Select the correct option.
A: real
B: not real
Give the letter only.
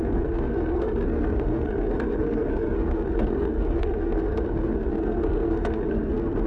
B